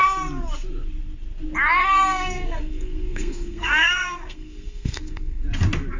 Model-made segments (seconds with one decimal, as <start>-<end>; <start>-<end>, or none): 1.8-5.4